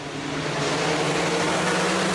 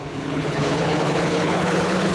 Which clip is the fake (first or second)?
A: second